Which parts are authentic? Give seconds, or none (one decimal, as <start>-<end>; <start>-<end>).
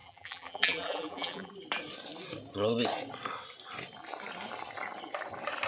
1.5-5.7